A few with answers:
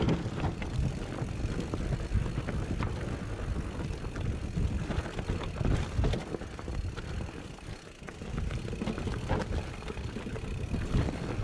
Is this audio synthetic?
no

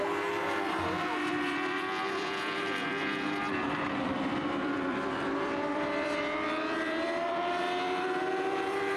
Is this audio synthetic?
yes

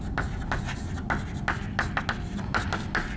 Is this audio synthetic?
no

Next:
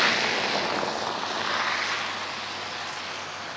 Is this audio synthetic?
no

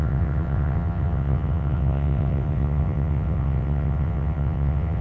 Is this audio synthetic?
yes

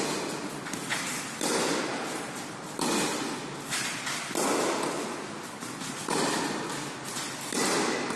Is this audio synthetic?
no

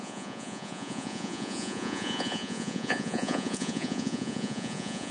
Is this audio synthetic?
yes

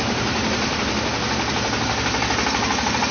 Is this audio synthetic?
no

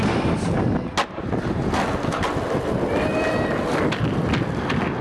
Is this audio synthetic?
no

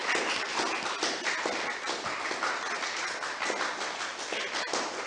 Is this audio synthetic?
no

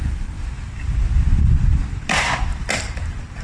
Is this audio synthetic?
no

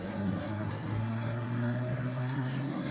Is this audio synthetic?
yes